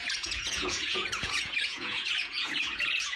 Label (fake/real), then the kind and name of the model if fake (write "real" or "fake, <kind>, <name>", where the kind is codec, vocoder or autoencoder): fake, vocoder, Vocos